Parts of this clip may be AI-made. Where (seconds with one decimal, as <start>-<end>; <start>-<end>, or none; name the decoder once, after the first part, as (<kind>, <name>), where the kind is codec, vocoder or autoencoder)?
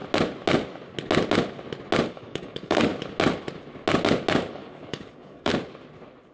2.1-2.9 (codec, DAC); 4.5-5.5